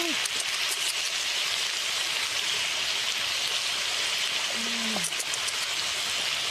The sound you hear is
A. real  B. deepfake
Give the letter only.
A